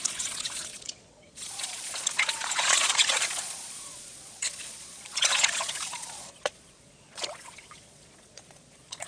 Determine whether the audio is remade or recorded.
remade